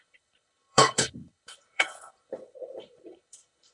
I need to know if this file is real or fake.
fake